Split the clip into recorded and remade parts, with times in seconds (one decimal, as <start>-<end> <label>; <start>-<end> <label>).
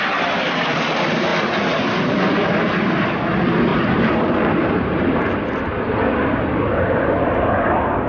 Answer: 0.0-3.7 recorded; 3.7-5.4 remade; 5.4-8.1 recorded